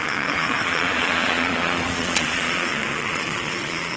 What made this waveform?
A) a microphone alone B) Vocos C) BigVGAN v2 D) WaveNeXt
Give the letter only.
B